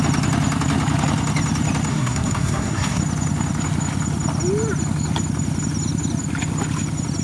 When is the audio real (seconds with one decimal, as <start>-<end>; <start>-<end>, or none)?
0.0-1.9; 3.0-7.2